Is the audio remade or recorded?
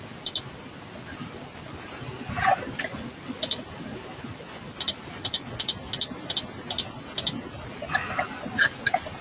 recorded